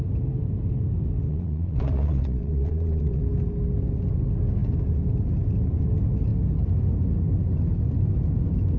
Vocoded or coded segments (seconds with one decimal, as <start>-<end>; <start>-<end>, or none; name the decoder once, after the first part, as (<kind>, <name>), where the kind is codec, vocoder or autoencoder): 1.3-3.2 (vocoder, Vocos)